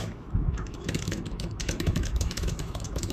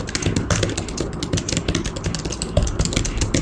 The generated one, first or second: first